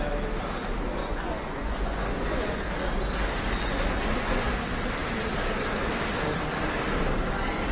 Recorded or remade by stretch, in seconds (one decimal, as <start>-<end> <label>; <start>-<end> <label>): 0.0-1.0 recorded; 1.0-2.6 remade; 2.6-3.7 recorded; 3.7-4.5 remade; 4.5-7.7 recorded